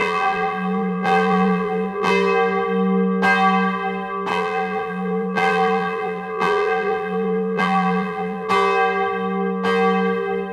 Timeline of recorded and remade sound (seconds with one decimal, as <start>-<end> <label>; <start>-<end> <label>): 0.0-2.1 remade; 2.1-4.3 recorded; 4.3-8.5 remade; 8.5-10.5 recorded